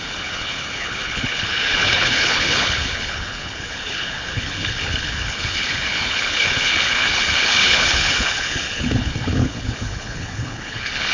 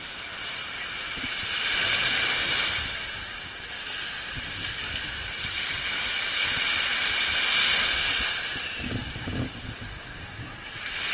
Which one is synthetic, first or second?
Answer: first